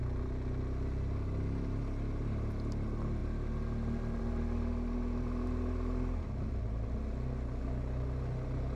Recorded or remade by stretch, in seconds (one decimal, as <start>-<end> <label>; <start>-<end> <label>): 0.0-8.8 recorded